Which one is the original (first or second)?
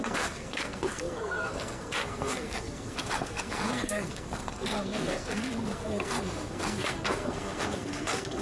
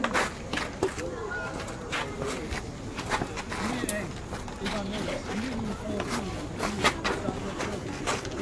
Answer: second